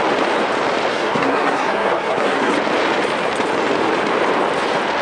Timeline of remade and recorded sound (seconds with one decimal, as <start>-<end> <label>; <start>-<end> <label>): 0.0-0.9 recorded; 0.9-2.5 remade; 2.5-5.0 recorded